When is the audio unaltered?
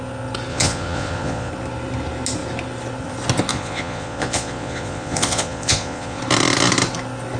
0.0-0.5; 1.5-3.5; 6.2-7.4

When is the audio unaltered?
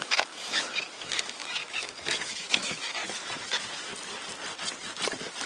3.0-3.5; 3.9-5.5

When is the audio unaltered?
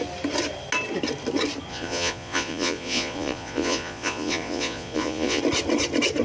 0.0-1.7; 5.4-6.2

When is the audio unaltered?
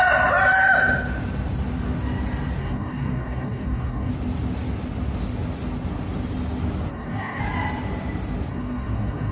0.0-2.6; 4.1-6.9; 7.4-8.5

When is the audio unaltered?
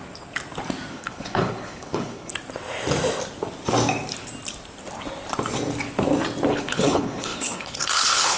0.0-0.9; 2.3-6.5